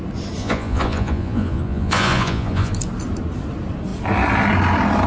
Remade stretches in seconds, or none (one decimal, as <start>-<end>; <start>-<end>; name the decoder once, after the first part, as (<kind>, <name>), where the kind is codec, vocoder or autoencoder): 0.4-2.7 (vocoder, Vocos)